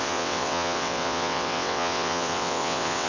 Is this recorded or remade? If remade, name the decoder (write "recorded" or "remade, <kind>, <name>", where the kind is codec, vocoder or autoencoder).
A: remade, vocoder, WaveNeXt